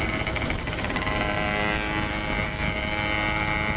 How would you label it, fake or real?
real